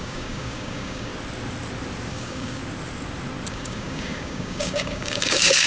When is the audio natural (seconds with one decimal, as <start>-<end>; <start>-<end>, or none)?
1.1-2.1; 2.6-3.5